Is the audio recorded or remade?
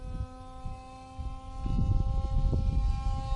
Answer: recorded